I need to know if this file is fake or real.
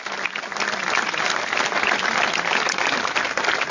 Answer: real